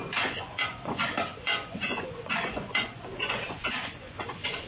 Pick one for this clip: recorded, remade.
remade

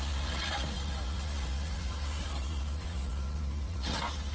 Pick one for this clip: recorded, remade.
remade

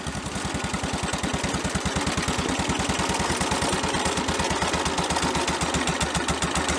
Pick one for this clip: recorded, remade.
recorded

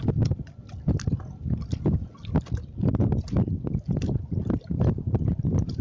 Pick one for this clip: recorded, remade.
recorded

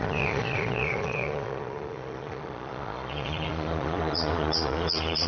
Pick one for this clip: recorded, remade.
remade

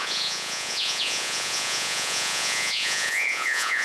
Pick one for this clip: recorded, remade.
remade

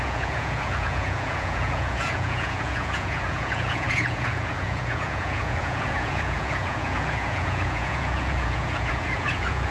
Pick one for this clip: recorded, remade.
remade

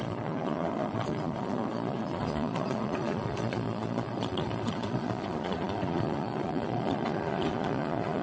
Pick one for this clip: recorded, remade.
remade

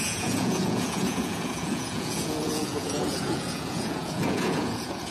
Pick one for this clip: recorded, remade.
remade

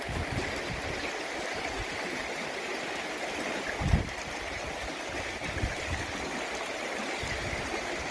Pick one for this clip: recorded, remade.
recorded